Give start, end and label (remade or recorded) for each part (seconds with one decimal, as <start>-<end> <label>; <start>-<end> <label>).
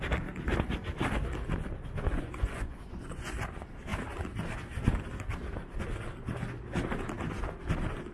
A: 0.0-2.1 recorded; 2.1-3.3 remade; 3.3-8.1 recorded